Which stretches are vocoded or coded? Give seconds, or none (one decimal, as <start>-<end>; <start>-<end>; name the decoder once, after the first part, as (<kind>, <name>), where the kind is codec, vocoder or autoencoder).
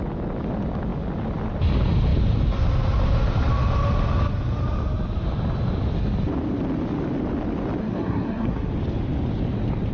7.8-8.7 (codec, SNAC)